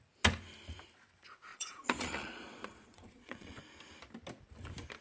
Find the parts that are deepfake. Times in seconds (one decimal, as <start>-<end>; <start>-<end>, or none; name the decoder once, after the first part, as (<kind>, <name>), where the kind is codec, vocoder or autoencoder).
1.5-3.6 (vocoder, Vocos)